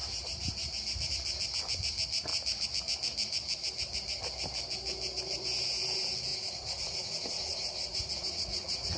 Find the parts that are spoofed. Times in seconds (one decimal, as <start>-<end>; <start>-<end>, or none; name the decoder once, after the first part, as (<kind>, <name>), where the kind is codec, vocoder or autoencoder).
6.3-9.0 (vocoder, Vocos)